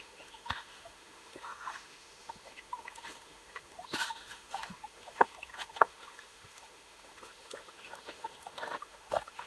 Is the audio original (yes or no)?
no